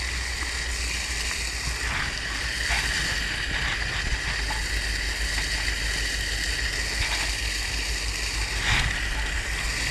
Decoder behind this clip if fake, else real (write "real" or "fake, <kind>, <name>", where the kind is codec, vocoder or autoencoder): real